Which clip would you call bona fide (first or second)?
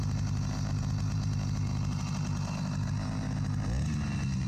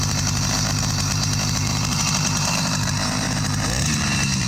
first